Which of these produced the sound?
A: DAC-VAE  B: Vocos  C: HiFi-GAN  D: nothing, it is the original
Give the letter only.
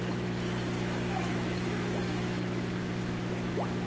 A